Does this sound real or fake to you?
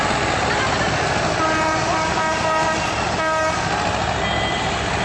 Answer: real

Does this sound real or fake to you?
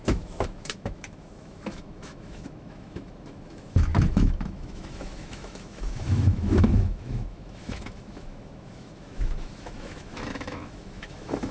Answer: fake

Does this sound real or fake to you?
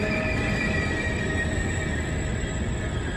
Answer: real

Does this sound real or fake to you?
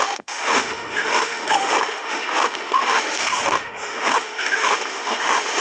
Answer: fake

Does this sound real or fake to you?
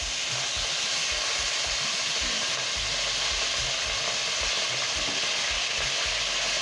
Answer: real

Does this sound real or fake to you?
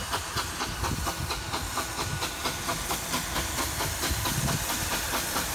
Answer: real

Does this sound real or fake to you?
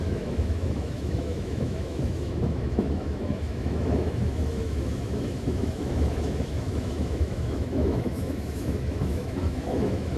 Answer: fake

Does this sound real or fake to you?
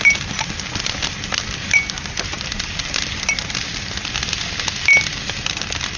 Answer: real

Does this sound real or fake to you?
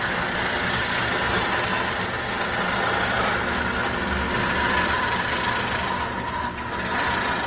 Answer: real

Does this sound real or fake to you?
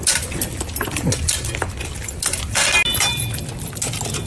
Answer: real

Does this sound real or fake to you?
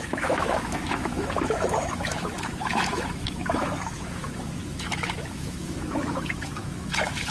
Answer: fake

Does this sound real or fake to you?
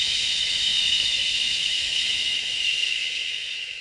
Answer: fake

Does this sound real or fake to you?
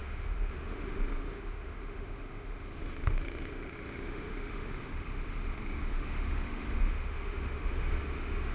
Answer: fake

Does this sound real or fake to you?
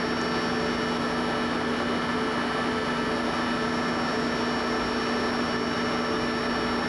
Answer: real